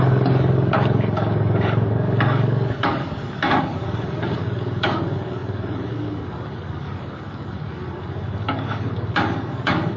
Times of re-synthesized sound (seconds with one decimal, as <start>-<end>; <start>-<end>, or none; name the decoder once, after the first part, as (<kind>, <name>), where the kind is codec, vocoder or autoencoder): 0.0-10.0 (codec, DAC)